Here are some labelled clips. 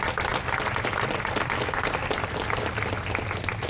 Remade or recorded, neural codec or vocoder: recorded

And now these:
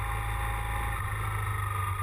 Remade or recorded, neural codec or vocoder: recorded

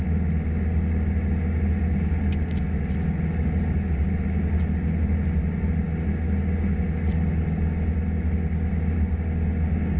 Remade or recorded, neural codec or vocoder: recorded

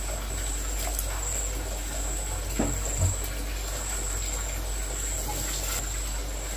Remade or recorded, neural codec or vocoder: recorded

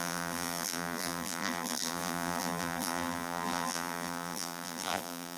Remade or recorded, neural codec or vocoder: remade, vocoder, BigVGAN v2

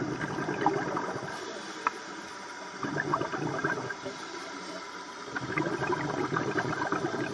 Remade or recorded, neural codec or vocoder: remade, vocoder, BigVGAN v2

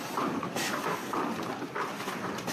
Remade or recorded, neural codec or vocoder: recorded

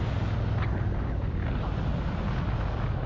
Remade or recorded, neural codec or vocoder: recorded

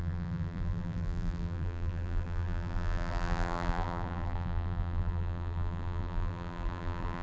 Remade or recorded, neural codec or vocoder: remade, vocoder, BigVGAN v2